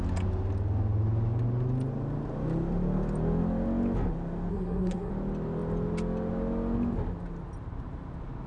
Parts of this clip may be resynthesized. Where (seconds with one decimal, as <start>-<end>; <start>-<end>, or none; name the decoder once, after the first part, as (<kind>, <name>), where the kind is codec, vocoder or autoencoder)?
4.5-5.1 (codec, SNAC)